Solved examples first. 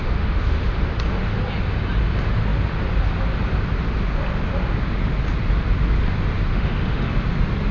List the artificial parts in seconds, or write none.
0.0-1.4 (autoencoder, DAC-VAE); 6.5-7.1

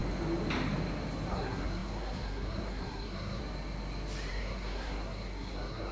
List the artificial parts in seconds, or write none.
1.3-3.4 (codec, SNAC); 4.3-5.9

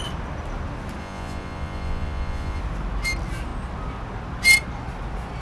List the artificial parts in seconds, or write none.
1.0-2.6 (vocoder, Vocos)

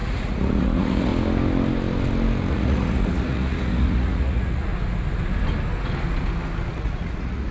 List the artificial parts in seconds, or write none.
0.0-1.1 (vocoder, Vocos); 2.5-4.7; 6.7-7.5

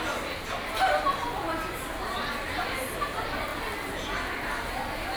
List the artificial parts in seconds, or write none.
none

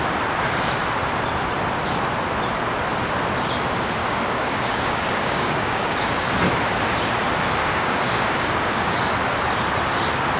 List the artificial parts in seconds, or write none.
4.0-5.9 (codec, DAC); 7.6-9.1

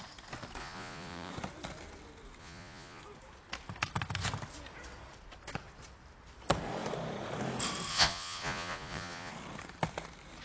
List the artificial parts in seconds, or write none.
0.6-1.3 (vocoder, Vocos); 2.4-3.0; 7.9-9.3

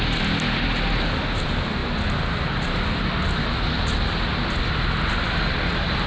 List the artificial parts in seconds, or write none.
none